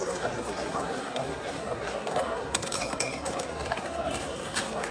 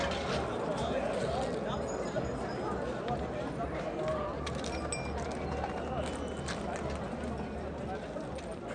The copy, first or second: first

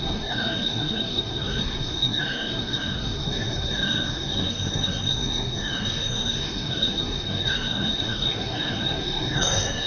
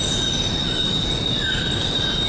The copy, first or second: first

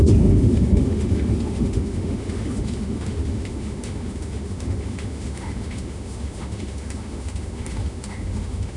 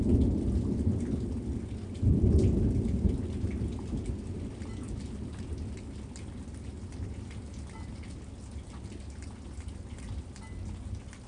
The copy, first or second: first